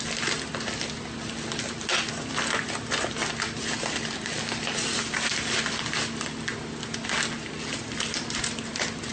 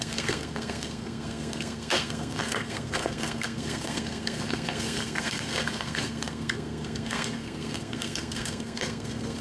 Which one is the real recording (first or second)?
first